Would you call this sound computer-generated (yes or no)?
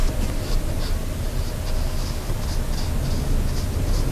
no